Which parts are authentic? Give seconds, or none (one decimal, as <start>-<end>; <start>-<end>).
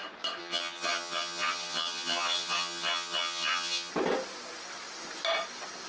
0.0-0.4; 3.9-5.9